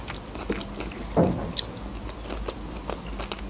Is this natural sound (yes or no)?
yes